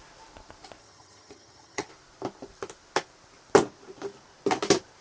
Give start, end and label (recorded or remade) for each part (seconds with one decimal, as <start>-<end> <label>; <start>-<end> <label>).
0.0-0.8 recorded; 0.8-1.9 remade; 1.9-5.0 recorded